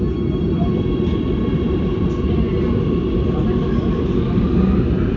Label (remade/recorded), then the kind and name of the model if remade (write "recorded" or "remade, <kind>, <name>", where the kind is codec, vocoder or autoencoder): recorded